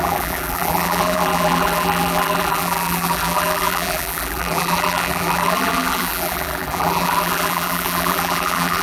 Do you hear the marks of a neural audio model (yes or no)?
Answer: yes